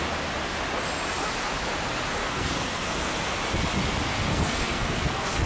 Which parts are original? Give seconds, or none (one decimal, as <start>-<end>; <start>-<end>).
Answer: 0.0-2.2; 3.1-4.3